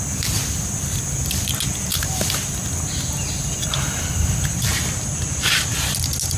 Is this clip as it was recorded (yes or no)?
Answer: yes